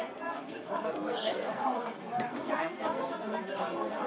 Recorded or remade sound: remade